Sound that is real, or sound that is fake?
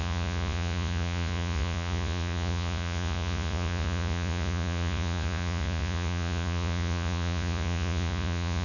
fake